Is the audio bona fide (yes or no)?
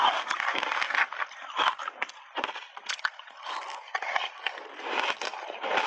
yes